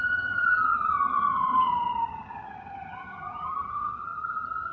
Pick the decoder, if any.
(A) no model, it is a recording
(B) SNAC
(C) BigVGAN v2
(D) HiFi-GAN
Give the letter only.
D